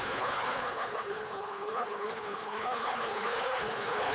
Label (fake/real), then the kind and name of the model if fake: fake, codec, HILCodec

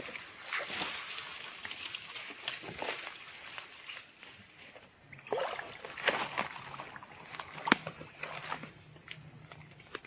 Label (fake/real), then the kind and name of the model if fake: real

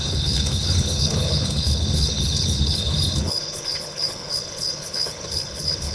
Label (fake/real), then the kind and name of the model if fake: fake, codec, HILCodec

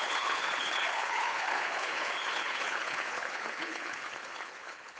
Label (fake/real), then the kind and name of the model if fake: fake, codec, HILCodec